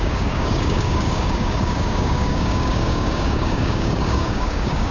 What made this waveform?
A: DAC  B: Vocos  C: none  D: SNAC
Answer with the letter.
A